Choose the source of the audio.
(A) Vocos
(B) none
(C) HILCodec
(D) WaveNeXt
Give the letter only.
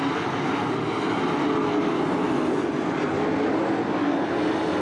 B